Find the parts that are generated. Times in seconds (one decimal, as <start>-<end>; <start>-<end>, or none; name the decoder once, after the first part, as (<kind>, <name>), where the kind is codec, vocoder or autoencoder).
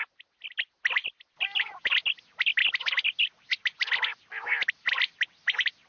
none